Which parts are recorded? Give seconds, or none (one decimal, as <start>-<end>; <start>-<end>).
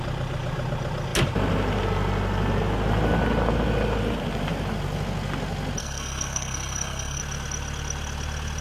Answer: 0.0-5.8; 7.2-8.6